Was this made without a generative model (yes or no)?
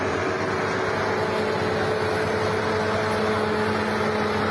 yes